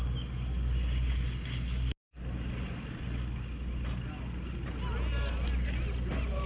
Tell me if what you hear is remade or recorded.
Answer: recorded